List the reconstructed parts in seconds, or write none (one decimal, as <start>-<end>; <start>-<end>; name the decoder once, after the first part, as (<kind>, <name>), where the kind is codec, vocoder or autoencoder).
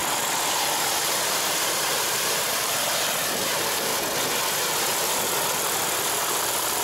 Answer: 0.5-3.9 (vocoder, BigVGAN v2)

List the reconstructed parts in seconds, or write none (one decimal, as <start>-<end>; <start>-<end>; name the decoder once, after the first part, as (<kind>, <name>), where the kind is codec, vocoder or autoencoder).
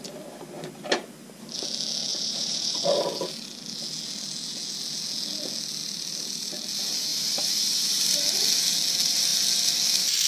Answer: 2.1-3.1 (vocoder, BigVGAN v2); 5.8-6.5; 7.1-8.1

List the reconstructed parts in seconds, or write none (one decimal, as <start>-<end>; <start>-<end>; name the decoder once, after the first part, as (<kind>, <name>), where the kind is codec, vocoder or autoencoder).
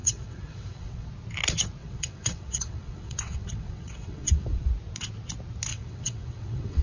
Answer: 0.0-1.1 (vocoder, WaveNeXt); 1.8-4.7; 5.7-6.8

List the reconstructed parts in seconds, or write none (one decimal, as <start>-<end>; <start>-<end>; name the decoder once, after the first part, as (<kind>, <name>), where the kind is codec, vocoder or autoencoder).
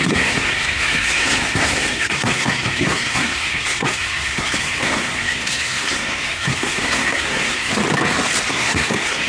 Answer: 0.0-7.7 (codec, SNAC); 8.5-9.3